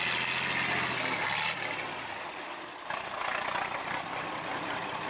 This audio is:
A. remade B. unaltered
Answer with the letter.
B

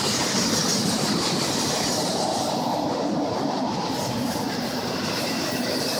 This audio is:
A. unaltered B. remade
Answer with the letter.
B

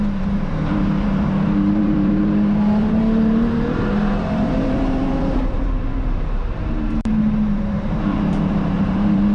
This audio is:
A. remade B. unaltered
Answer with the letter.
A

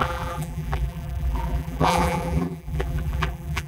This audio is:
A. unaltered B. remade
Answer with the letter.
B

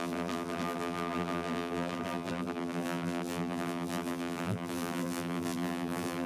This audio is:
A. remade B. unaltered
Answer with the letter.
A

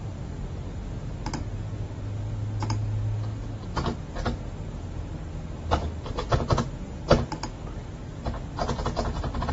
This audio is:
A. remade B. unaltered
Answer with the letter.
B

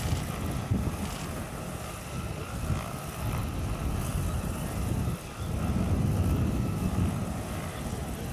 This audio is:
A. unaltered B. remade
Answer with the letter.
A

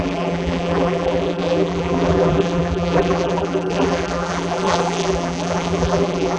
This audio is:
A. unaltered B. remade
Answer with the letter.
B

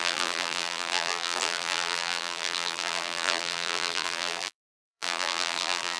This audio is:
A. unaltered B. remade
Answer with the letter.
B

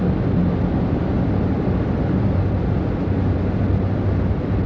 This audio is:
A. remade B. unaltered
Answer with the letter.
B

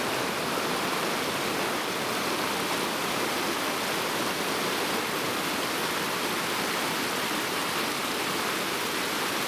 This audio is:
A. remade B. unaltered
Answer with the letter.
A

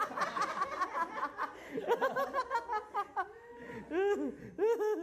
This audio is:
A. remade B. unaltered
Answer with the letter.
B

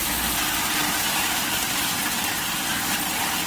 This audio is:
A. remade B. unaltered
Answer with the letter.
B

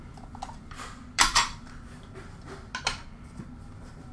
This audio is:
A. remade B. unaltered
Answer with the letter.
A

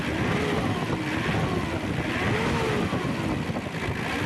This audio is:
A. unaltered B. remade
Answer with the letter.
A